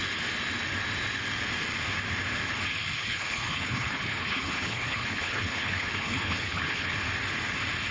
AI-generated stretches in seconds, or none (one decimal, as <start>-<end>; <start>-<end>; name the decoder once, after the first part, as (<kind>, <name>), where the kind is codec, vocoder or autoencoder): 3.0-6.9 (codec, HILCodec)